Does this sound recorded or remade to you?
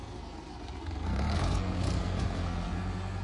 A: remade